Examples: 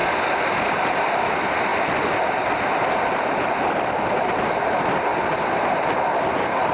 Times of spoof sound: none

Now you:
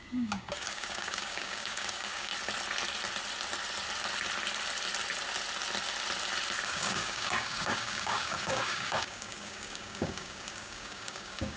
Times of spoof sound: 0.0-2.3 (codec, DAC); 6.6-11.6

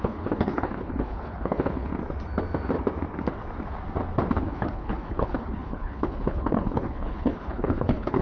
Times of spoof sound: 0.0-1.9 (codec, HILCodec); 4.3-8.2